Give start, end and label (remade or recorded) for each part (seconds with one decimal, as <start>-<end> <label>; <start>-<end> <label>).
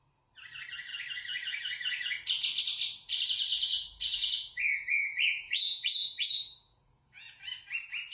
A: 0.0-3.5 recorded; 3.5-7.4 remade; 7.4-8.1 recorded